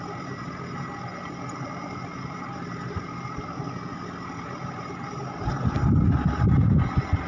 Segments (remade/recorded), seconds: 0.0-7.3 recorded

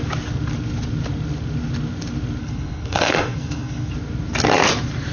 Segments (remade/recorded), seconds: 0.0-2.4 recorded; 2.4-3.9 remade; 3.9-5.1 recorded

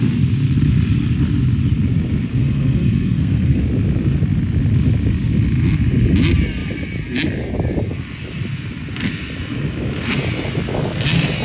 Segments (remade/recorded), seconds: 0.0-2.3 recorded; 2.3-3.6 remade; 3.6-11.4 recorded

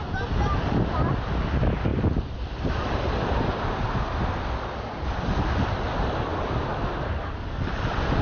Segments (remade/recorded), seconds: 0.0-8.2 recorded

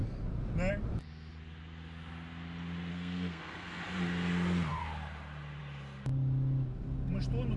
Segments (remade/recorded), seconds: 0.0-2.9 recorded; 2.9-3.8 remade; 3.8-7.6 recorded

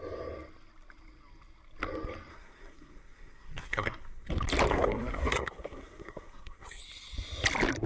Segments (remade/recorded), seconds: 0.0-2.3 recorded; 2.3-4.3 remade; 4.3-4.7 recorded; 4.7-6.8 remade; 6.8-7.9 recorded